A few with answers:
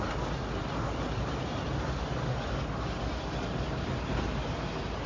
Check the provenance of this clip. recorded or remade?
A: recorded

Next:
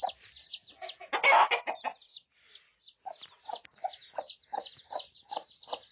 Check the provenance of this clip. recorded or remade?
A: recorded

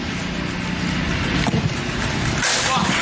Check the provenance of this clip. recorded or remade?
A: recorded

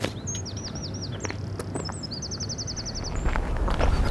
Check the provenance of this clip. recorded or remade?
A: recorded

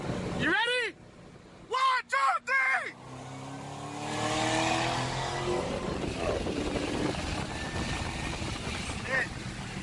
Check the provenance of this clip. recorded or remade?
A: recorded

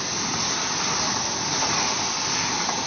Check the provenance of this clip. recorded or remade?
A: recorded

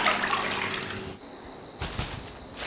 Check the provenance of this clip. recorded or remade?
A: recorded